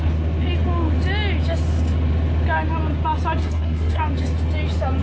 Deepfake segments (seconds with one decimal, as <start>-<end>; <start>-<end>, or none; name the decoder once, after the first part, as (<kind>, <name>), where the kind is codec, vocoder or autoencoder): 3.4-4.0 (codec, SNAC)